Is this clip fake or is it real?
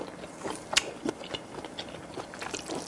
real